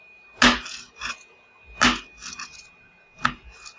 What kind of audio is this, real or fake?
real